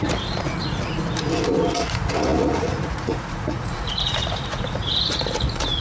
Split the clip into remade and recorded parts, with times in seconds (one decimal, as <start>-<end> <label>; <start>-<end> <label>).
0.0-1.0 remade; 1.0-1.8 recorded; 1.8-5.8 remade